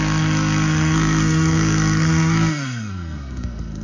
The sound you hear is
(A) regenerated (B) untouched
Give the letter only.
A